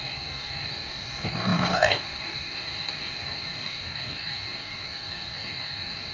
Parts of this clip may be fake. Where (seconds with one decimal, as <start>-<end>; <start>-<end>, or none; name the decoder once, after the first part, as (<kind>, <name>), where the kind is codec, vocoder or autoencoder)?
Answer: 0.0-6.1 (codec, DAC)